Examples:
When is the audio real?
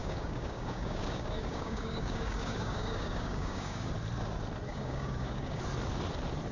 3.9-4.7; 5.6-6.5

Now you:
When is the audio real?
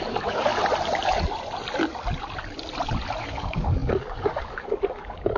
0.5-3.2